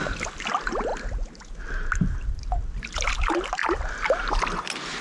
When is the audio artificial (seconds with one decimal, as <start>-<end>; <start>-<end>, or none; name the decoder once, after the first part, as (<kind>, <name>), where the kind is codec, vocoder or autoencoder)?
none